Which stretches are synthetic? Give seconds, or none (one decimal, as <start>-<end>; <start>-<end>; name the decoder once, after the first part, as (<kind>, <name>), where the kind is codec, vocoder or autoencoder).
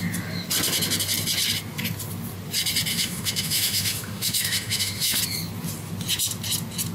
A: 2.9-5.2 (autoencoder, DAC-VAE)